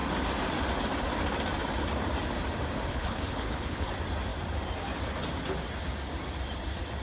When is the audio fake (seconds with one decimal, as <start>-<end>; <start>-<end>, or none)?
2.9-3.9